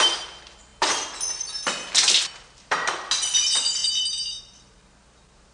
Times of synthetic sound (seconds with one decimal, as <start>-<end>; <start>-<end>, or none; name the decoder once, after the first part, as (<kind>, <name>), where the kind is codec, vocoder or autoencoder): none